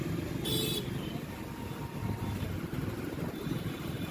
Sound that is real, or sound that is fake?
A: real